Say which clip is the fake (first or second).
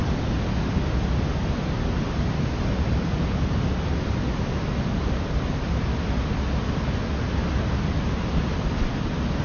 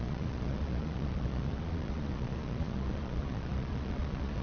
second